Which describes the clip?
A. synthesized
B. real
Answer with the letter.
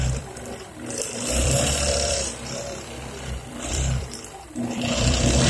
A